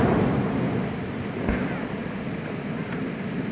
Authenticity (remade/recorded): recorded